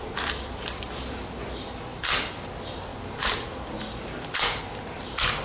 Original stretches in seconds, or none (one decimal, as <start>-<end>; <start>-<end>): 0.0-1.9; 2.5-5.4

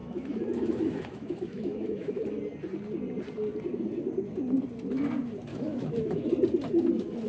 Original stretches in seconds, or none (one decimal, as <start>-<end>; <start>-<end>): 2.3-5.5; 6.3-7.3